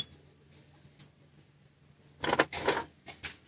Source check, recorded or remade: recorded